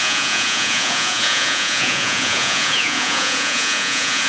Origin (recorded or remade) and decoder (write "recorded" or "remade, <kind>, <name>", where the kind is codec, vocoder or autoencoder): remade, vocoder, Vocos